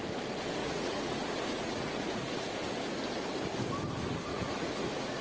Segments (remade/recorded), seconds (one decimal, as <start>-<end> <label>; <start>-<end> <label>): 0.0-0.6 recorded; 0.6-2.5 remade; 2.5-4.3 recorded; 4.3-5.2 remade